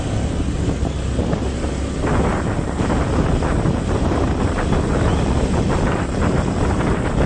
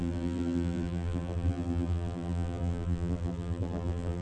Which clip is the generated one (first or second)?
second